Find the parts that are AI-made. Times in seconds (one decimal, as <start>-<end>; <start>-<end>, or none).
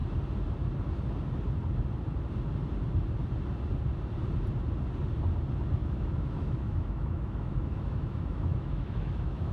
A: 5.8-9.5